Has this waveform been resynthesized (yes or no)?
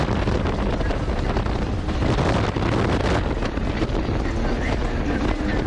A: no